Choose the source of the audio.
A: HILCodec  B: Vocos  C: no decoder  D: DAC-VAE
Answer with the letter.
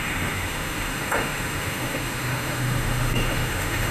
D